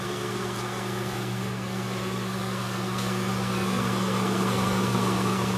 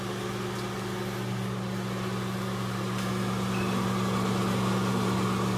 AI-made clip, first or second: first